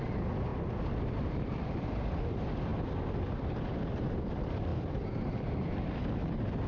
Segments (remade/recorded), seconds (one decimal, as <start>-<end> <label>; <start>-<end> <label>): 0.0-0.5 recorded; 0.5-2.1 remade; 2.1-4.7 recorded; 4.7-5.8 remade; 5.8-6.7 recorded